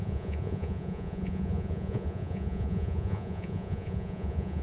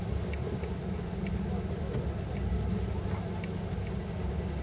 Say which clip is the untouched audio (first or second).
second